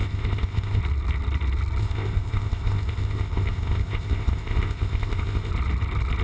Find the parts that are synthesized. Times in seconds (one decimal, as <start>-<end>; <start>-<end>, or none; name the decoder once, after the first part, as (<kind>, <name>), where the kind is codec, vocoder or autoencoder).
0.0-0.8 (codec, ZipCodec); 1.8-5.5